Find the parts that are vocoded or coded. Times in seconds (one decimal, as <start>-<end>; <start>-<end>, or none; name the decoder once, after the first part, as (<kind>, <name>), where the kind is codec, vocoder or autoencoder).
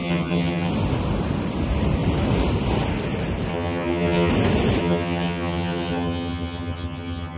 0.0-0.7 (vocoder, HiFi-GAN); 3.5-4.3; 4.8-7.4